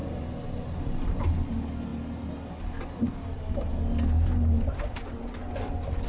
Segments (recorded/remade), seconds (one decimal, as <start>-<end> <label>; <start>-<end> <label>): 0.0-6.1 recorded

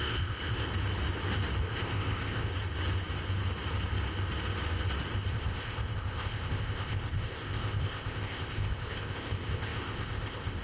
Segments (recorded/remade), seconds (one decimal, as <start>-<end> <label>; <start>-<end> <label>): 0.0-0.7 remade; 0.7-1.6 recorded; 1.6-2.5 remade; 2.5-5.3 recorded; 5.3-10.6 remade

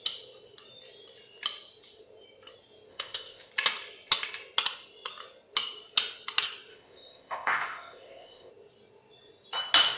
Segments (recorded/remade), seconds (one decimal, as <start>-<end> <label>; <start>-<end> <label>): 0.0-2.9 recorded; 2.9-3.5 remade; 3.5-6.7 recorded; 6.7-8.5 remade; 8.5-10.0 recorded

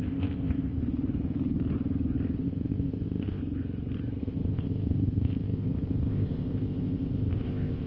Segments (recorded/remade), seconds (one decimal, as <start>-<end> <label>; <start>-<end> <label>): 0.0-0.8 remade; 0.8-2.4 recorded; 2.4-3.4 remade; 3.4-4.2 recorded; 4.2-7.9 remade

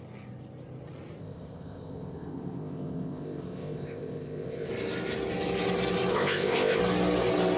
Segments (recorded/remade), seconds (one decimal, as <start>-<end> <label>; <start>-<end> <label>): 0.0-1.2 recorded; 1.2-4.7 remade; 4.7-6.1 recorded; 6.1-6.8 remade; 6.8-7.6 recorded